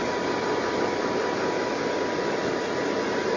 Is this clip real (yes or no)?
yes